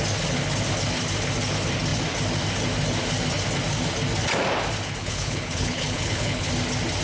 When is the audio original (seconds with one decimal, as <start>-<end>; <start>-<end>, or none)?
0.0-5.0; 6.5-7.0